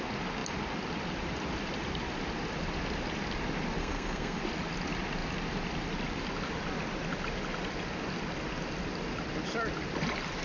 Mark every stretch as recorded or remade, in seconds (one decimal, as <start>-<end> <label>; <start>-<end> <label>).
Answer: 0.0-3.8 recorded; 3.8-4.4 remade; 4.4-10.4 recorded